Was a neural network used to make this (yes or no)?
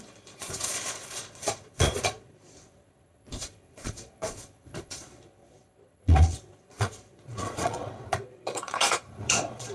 yes